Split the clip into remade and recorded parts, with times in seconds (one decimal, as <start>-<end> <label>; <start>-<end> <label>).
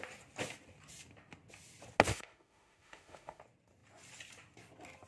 0.0-2.1 recorded; 2.1-3.4 remade; 3.4-5.1 recorded